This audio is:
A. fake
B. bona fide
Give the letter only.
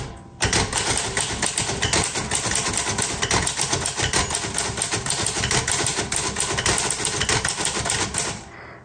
B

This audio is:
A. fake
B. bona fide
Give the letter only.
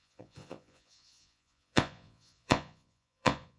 A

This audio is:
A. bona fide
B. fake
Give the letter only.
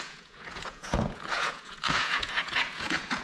B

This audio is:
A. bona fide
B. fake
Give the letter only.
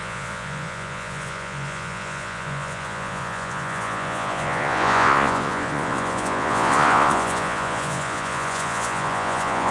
B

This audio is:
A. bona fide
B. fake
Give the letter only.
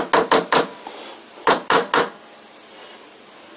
A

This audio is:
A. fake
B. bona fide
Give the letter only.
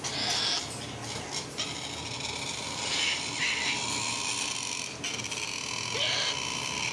B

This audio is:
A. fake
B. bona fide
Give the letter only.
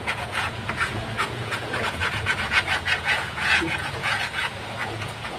A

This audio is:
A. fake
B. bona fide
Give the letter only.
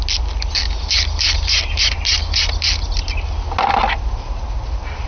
B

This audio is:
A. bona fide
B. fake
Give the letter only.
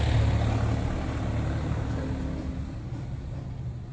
A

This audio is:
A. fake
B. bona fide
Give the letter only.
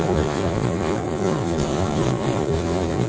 A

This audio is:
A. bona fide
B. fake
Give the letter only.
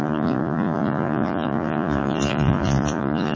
B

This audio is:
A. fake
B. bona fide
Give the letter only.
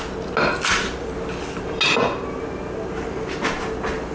B